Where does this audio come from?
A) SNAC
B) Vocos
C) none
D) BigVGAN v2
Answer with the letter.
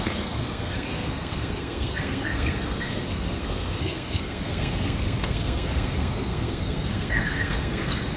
A